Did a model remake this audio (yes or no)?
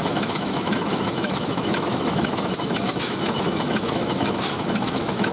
yes